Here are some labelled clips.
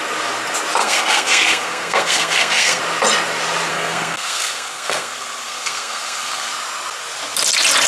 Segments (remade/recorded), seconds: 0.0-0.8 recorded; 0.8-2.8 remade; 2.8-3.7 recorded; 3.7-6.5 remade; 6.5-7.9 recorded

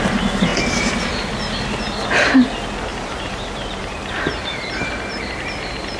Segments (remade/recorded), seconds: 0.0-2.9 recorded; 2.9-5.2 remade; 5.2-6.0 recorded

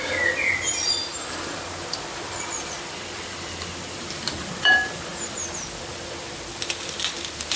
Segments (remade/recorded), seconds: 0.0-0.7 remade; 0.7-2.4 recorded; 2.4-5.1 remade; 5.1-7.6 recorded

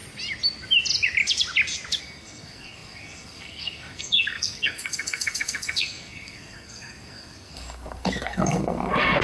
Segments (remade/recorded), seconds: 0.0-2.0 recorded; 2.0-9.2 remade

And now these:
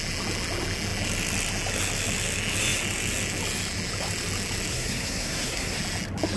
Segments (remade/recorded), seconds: 0.0-4.7 recorded; 4.7-5.8 remade; 5.8-6.4 recorded